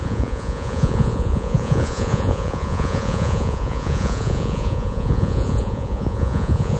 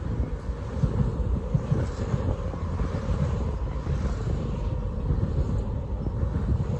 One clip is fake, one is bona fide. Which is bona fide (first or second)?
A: second